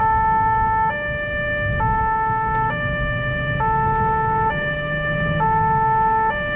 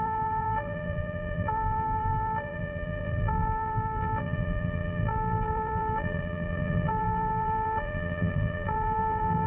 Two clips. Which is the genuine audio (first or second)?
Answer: first